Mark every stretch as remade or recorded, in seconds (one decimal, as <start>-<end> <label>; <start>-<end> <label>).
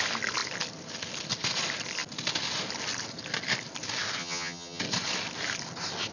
0.0-4.2 recorded; 4.2-4.8 remade; 4.8-6.1 recorded